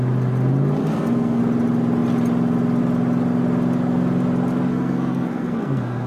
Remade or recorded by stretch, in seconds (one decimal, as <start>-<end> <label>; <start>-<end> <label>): 0.0-0.8 recorded; 0.8-1.4 remade; 1.4-4.7 recorded; 4.7-6.1 remade